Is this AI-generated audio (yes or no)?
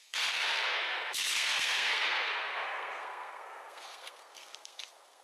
yes